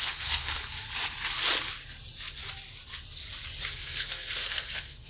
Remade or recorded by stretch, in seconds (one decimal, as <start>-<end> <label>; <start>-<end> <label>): 0.0-0.6 remade; 0.6-3.7 recorded; 3.7-5.1 remade